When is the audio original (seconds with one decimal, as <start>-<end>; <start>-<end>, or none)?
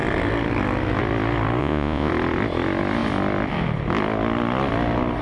0.0-1.6; 2.1-5.2